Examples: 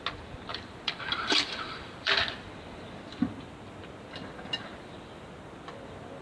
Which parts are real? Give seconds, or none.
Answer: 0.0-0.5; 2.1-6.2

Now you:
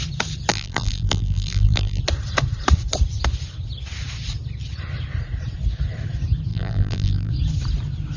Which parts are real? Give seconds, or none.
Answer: 0.0-0.5; 2.0-6.5; 7.3-8.2

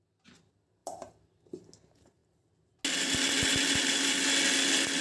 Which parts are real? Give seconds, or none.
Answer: 0.0-0.8; 1.3-5.0

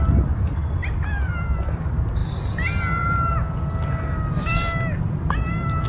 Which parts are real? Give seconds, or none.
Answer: 0.0-5.9

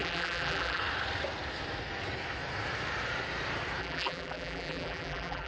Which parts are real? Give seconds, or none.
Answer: 0.8-3.8

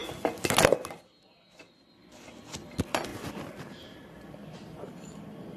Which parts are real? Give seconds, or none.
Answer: 0.0-0.9

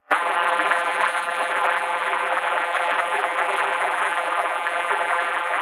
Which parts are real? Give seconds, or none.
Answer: none